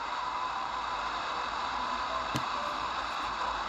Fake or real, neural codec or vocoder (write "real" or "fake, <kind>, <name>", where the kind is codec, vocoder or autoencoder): fake, vocoder, BigVGAN v2